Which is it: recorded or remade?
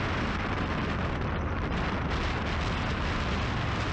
recorded